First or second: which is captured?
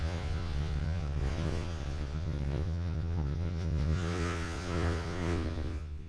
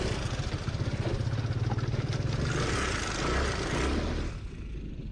second